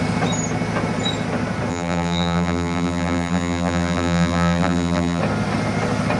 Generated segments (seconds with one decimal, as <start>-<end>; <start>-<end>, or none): 1.7-5.2